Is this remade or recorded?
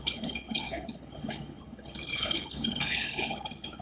remade